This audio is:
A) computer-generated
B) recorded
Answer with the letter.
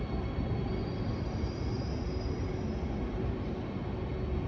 B